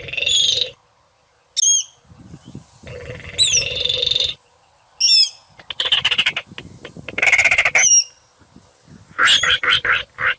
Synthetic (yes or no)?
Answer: no